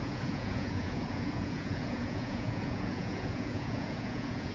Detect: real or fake fake